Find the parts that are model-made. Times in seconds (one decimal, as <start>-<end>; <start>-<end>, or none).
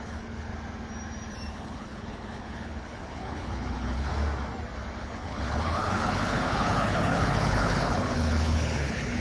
0.0-0.5; 1.5-4.1; 5.0-9.2